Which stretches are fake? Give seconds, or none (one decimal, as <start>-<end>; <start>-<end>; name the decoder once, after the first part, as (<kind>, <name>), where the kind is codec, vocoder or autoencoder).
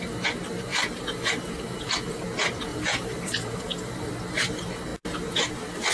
0.7-2.2 (vocoder, BigVGAN v2); 2.7-4.1